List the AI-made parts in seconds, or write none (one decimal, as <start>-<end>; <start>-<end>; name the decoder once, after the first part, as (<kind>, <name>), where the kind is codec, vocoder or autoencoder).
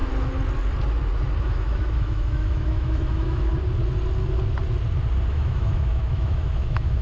1.4-3.5 (autoencoder, DAC-VAE); 5.3-7.0